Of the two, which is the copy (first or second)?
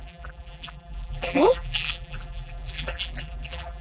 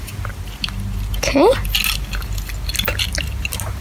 first